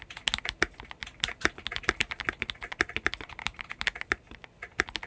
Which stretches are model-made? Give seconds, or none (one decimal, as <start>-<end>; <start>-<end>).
none